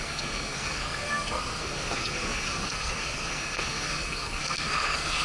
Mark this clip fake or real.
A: fake